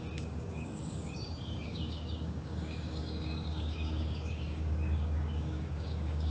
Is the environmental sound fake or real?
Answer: fake